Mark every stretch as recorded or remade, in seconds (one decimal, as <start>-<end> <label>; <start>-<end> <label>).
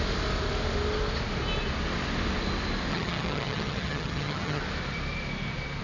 0.0-2.9 recorded; 2.9-4.6 remade; 4.6-5.8 recorded